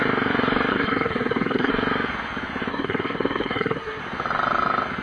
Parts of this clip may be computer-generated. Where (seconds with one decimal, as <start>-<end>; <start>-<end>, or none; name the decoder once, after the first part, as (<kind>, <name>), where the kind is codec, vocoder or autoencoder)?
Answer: 0.7-1.7 (codec, SNAC); 2.7-4.0